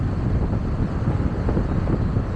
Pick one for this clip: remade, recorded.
recorded